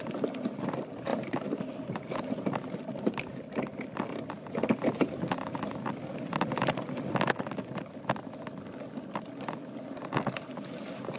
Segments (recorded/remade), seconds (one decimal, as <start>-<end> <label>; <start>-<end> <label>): 0.0-11.2 recorded